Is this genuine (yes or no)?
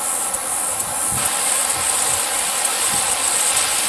yes